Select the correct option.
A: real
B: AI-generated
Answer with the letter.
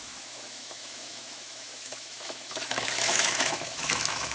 B